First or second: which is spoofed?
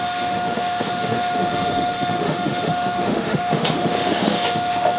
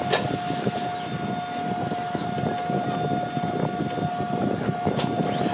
first